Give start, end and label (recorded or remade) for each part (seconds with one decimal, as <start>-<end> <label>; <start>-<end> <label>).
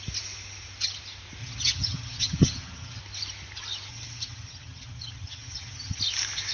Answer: 0.0-1.4 recorded; 1.4-3.0 remade; 3.0-3.9 recorded; 3.9-6.0 remade; 6.0-6.5 recorded